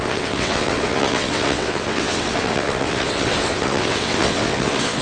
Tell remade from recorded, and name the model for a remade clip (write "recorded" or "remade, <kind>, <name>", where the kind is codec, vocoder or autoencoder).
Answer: remade, vocoder, WaveNeXt